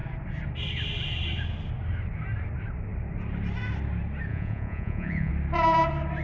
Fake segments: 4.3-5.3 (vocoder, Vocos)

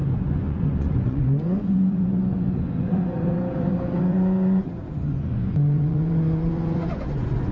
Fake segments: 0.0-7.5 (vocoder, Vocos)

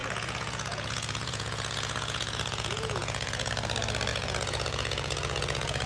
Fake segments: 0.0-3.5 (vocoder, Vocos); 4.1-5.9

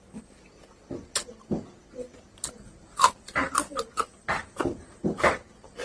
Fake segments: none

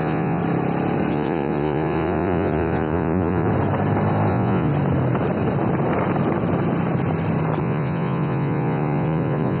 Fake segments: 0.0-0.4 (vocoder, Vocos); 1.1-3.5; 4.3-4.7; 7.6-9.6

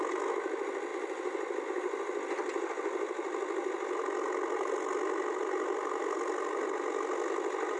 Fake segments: none